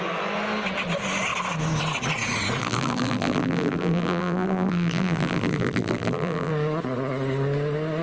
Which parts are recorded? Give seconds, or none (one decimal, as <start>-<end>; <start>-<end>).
0.0-2.6; 6.5-8.0